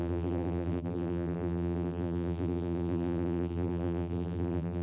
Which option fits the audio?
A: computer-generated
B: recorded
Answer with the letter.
A